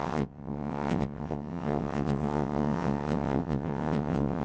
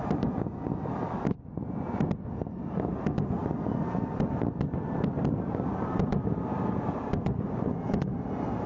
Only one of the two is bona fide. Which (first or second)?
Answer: second